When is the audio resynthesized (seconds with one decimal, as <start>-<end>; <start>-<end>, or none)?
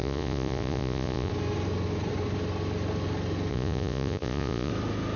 0.0-1.3; 3.5-4.7